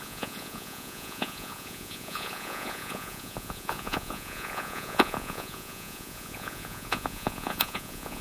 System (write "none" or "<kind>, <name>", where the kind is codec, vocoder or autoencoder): vocoder, Vocos